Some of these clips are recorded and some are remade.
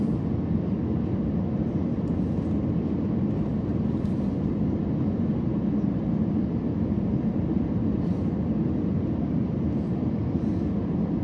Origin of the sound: recorded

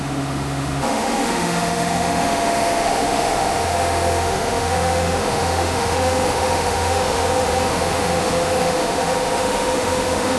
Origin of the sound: remade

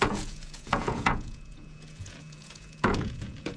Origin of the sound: remade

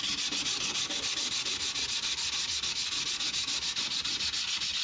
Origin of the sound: recorded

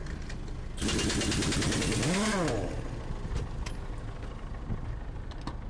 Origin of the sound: recorded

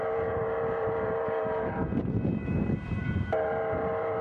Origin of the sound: remade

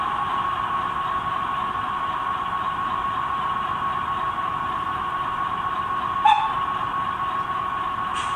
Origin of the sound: recorded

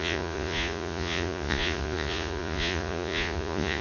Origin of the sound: remade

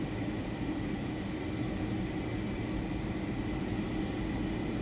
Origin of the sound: recorded